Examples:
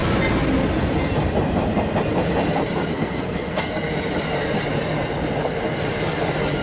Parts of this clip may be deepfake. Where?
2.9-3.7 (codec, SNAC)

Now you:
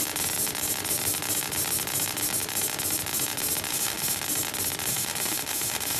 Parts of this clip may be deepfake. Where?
3.7-4.2 (autoencoder, DAC-VAE); 4.9-6.0

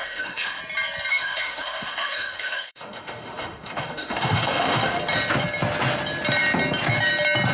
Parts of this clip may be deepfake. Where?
0.0-0.6 (autoencoder, DAC-VAE); 1.1-5.0

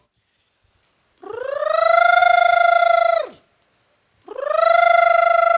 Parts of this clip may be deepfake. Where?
none

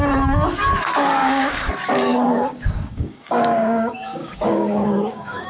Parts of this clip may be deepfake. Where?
1.2-1.7 (codec, DAC); 2.1-5.5

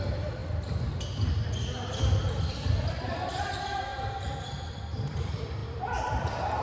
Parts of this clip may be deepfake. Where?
0.0-0.4 (vocoder, BigVGAN v2); 2.1-6.6

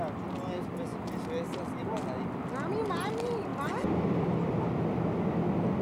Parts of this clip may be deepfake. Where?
none

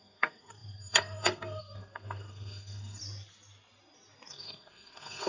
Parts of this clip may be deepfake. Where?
0.0-3.0 (codec, SNAC); 4.3-5.3